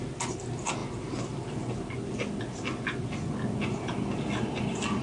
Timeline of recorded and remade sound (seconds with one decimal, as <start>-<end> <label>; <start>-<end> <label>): 0.0-5.0 recorded